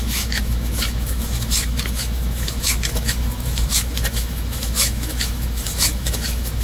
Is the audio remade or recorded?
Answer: remade